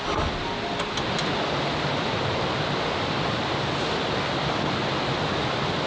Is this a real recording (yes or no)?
yes